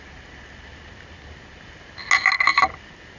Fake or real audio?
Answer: real